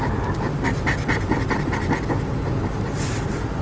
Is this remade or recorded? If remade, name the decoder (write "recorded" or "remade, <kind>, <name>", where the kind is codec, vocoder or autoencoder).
recorded